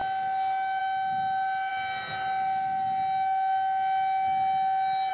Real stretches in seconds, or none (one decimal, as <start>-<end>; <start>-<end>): 0.0-5.1